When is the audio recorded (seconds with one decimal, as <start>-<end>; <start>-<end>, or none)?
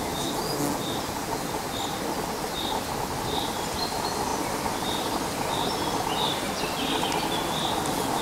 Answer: 0.0-4.3; 6.6-8.2